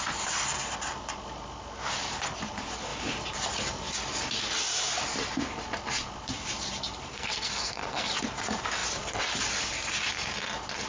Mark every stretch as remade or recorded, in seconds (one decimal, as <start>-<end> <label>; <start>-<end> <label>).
0.0-7.1 recorded; 7.1-8.1 remade; 8.1-10.9 recorded